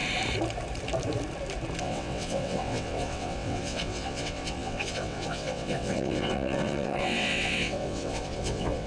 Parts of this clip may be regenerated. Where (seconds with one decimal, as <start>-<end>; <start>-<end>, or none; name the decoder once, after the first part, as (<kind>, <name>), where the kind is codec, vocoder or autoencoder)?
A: 1.8-8.9 (vocoder, WaveNeXt)